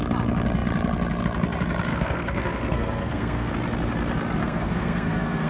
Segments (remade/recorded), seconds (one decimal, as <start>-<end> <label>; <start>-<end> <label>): 0.0-1.9 recorded; 1.9-3.5 remade; 3.5-4.4 recorded; 4.4-5.5 remade